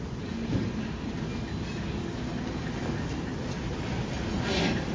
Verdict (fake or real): real